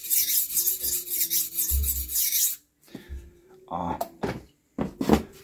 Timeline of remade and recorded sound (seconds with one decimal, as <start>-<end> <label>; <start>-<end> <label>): 0.0-5.4 recorded